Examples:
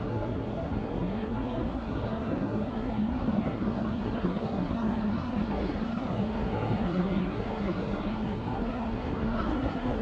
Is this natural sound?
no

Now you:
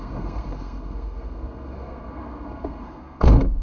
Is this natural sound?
no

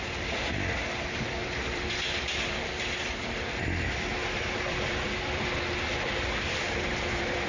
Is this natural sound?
no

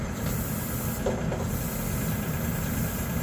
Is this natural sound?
yes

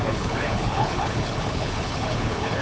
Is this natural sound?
no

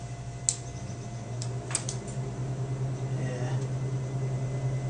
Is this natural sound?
yes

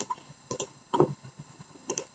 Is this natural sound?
no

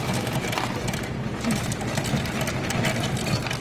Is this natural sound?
yes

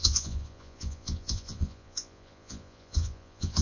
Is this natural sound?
no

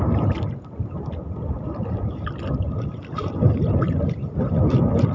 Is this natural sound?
yes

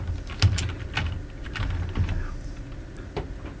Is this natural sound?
yes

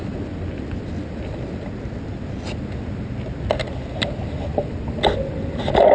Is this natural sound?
yes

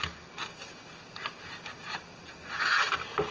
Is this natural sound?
yes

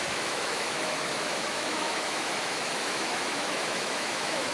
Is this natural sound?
no